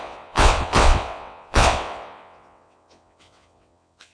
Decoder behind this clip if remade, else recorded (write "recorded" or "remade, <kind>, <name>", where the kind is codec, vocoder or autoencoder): remade, vocoder, WaveNeXt